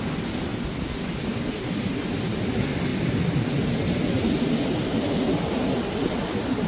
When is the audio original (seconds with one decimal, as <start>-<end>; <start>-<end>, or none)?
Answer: 0.0-6.7